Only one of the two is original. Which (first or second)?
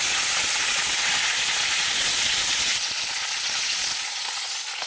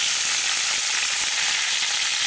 second